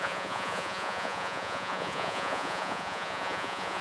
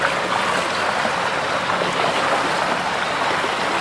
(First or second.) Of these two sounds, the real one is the second